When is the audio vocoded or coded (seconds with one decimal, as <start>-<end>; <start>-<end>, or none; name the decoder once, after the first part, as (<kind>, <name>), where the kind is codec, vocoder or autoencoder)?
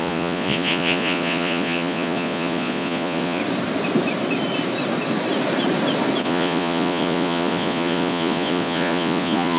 0.0-3.4 (vocoder, Vocos); 6.2-9.6